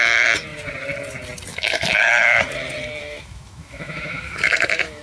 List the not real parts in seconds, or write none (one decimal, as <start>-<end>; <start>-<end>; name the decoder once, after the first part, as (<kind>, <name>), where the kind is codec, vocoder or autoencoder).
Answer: 1.5-2.4 (autoencoder, DAC-VAE); 3.0-5.0